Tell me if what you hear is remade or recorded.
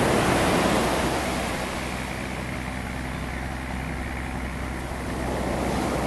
recorded